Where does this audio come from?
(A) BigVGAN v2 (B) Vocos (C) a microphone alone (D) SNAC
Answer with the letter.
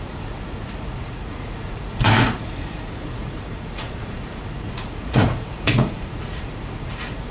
B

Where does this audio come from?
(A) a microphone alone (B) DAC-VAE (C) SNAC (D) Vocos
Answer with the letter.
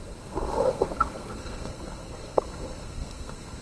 C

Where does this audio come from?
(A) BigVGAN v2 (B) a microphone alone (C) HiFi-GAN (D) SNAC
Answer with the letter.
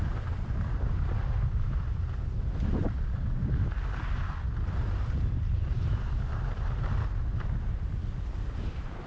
B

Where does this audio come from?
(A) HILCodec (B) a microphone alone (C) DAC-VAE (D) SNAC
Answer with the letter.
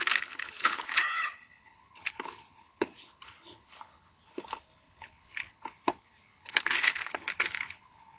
A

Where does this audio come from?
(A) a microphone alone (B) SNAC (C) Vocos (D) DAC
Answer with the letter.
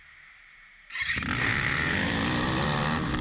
A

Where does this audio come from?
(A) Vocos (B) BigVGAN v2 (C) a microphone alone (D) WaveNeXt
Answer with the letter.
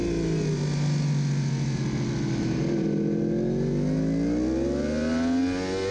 C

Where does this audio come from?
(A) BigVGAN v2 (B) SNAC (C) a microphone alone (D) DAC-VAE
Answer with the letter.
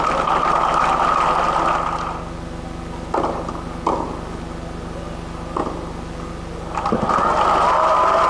C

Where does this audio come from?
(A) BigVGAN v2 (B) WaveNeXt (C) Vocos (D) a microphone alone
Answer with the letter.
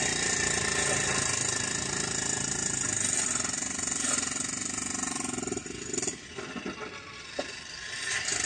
D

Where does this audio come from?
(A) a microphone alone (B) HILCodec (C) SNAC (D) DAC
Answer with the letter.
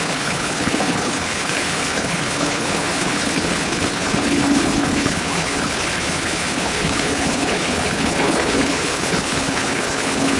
B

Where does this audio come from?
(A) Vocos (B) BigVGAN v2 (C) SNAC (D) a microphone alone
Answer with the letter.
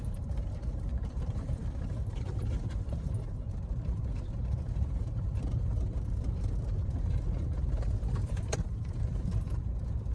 B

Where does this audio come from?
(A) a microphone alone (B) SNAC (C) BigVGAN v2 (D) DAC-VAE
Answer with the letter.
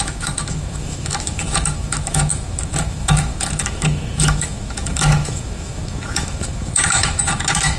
D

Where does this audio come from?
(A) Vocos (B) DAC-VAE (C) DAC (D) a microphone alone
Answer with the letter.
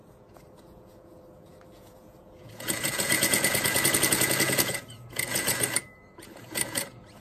A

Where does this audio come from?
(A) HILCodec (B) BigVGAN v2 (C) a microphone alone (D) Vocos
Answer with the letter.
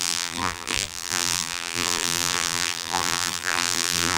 B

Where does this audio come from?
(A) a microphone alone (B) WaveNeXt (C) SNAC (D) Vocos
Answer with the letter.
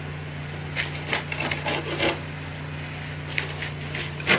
A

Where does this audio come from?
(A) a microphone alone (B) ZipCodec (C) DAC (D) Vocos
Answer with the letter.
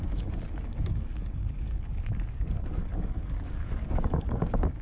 C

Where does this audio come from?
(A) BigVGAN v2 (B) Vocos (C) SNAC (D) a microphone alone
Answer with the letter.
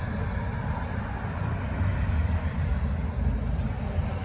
D